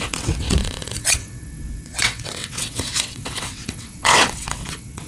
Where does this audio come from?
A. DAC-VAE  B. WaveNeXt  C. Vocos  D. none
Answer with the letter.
B